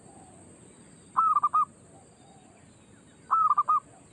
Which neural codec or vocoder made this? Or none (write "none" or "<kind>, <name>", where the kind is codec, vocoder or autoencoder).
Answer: none